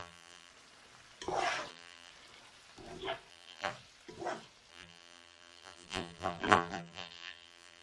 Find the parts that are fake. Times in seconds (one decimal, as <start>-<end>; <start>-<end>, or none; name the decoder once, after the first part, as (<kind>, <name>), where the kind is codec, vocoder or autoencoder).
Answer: 0.0-0.5 (vocoder, BigVGAN v2); 1.7-2.1; 3.3-3.7; 4.7-7.8